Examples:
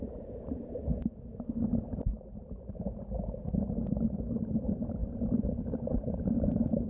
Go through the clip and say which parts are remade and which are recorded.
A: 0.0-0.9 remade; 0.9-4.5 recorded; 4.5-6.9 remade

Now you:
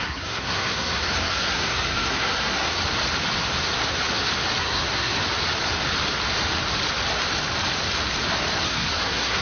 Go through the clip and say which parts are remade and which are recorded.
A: 0.0-2.8 remade; 2.8-4.6 recorded; 4.6-5.2 remade; 5.2-8.6 recorded; 8.6-9.4 remade

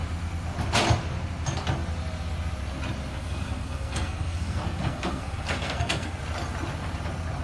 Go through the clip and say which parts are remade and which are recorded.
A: 0.0-3.1 recorded; 3.1-6.2 remade; 6.2-7.4 recorded

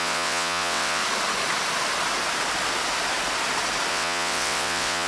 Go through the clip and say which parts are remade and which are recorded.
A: 0.0-1.0 remade; 1.0-3.9 recorded; 3.9-5.1 remade

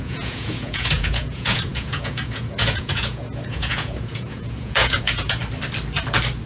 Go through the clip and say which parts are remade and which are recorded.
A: 0.0-5.4 remade; 5.4-6.5 recorded

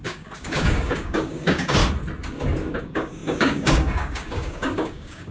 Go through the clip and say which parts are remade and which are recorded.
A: 0.0-1.8 remade; 1.8-2.8 recorded; 2.8-5.3 remade